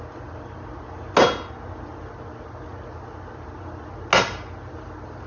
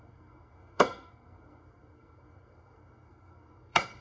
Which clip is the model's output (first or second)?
second